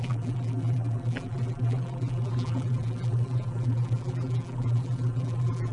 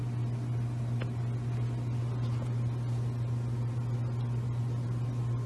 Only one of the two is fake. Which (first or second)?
first